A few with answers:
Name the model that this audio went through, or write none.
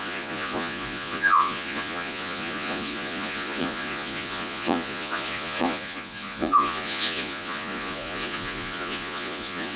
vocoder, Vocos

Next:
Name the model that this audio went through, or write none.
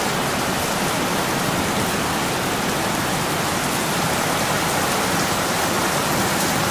none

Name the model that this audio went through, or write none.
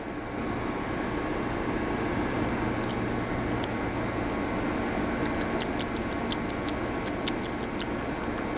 none